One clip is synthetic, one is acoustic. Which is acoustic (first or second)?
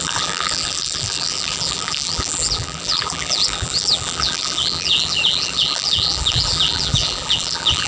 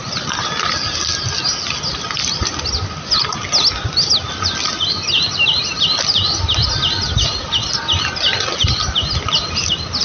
second